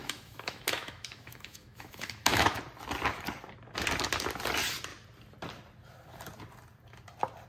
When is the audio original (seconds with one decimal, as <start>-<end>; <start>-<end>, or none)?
2.6-7.5